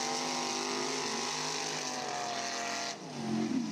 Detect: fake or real real